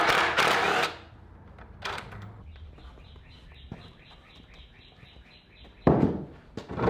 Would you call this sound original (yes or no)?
yes